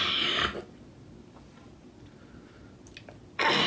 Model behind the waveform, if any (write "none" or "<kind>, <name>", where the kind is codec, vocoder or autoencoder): none